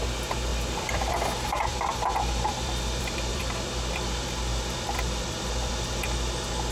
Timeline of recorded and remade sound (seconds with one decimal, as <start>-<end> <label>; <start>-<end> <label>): 0.0-0.5 recorded; 0.5-1.1 remade; 1.1-1.7 recorded; 1.7-5.7 remade; 5.7-6.7 recorded